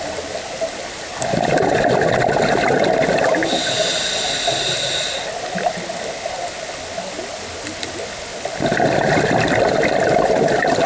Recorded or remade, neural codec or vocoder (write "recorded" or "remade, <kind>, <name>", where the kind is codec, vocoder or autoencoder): recorded